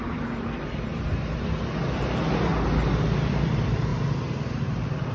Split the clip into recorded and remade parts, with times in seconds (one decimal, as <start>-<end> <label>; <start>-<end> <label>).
0.0-2.5 remade; 2.5-3.3 recorded; 3.3-3.9 remade; 3.9-4.6 recorded; 4.6-5.1 remade